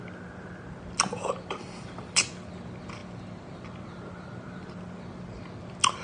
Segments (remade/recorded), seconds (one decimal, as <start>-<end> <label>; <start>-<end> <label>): 0.0-6.0 recorded